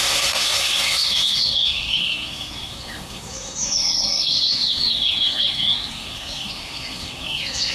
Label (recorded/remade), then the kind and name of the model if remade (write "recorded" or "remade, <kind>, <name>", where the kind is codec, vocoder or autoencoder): remade, codec, SNAC